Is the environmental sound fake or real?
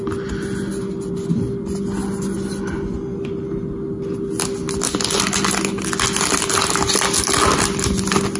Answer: real